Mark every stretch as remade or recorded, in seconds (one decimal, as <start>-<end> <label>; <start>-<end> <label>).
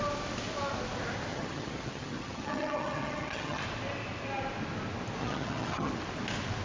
0.0-1.3 recorded; 1.3-3.6 remade; 3.6-5.2 recorded; 5.2-5.9 remade; 5.9-6.6 recorded